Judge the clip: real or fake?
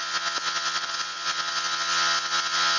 real